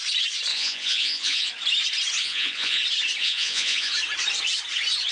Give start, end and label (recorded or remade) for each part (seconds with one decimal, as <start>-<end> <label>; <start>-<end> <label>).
0.0-0.5 recorded; 0.5-1.5 remade; 1.5-2.2 recorded; 2.2-2.8 remade; 2.8-3.2 recorded; 3.2-3.9 remade; 3.9-5.1 recorded